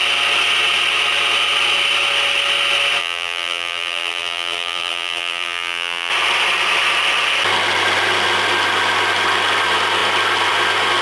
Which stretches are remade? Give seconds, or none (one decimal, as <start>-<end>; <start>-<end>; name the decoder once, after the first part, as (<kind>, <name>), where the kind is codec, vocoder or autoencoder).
3.0-6.1 (vocoder, BigVGAN v2)